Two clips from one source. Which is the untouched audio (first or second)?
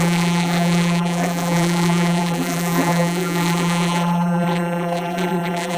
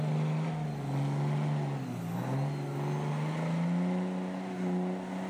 second